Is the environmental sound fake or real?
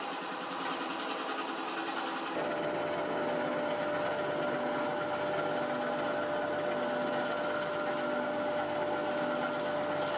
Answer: real